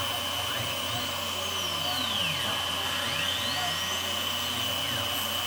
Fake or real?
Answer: real